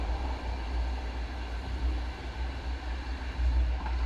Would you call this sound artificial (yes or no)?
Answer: no